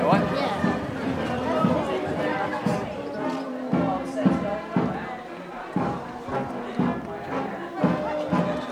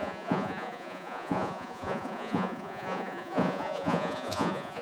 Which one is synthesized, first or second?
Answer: second